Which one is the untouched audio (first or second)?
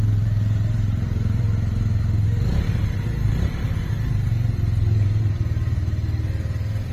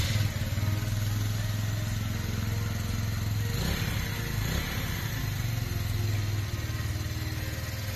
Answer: second